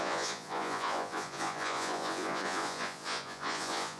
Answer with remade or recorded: remade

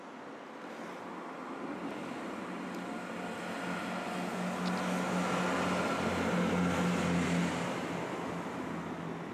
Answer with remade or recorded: recorded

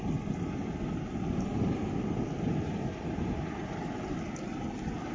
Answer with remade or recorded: recorded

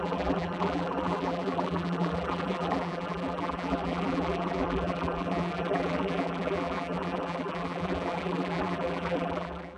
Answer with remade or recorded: remade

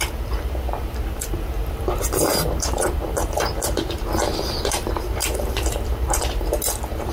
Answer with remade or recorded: remade